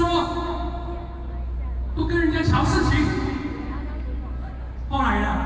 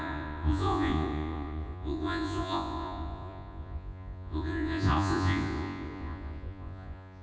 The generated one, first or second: second